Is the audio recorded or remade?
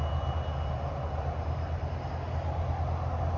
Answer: recorded